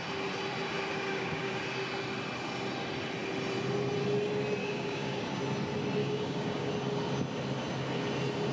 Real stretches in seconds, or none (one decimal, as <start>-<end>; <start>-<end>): 0.0-0.9; 1.6-4.6; 5.2-6.0; 6.7-8.5